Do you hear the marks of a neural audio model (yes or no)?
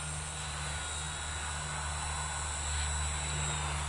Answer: no